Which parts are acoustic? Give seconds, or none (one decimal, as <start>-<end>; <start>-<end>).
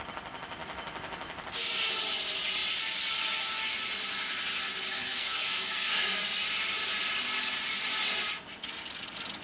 0.0-5.1; 6.2-9.4